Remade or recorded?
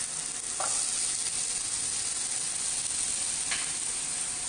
recorded